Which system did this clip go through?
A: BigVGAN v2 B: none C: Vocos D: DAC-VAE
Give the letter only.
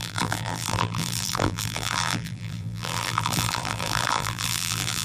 A